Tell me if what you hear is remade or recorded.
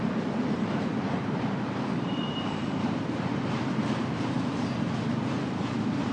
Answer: remade